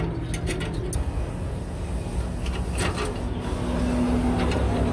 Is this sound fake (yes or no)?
no